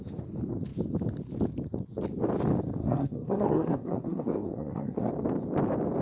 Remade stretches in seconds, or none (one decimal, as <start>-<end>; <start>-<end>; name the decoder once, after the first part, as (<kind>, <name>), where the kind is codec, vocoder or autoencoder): 2.8-5.1 (codec, SNAC)